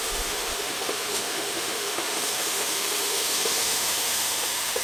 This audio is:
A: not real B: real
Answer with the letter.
A